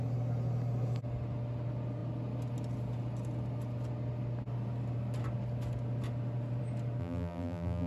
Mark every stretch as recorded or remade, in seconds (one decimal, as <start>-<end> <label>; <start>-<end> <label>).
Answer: 0.0-7.0 recorded; 7.0-7.9 remade